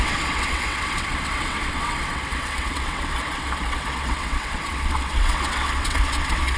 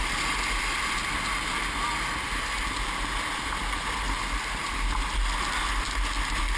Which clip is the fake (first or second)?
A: first